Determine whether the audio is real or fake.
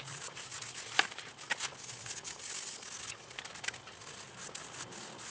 real